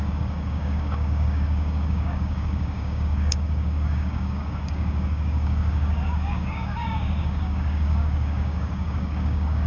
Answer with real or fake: fake